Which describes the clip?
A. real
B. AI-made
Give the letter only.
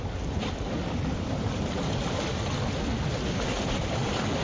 A